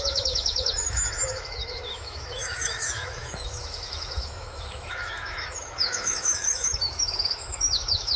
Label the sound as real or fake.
fake